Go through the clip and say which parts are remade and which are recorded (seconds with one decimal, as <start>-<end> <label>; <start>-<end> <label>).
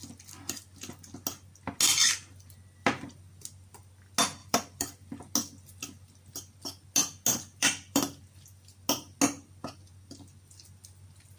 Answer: 0.0-4.4 recorded; 4.4-5.1 remade; 5.1-7.6 recorded; 7.6-8.2 remade; 8.2-11.4 recorded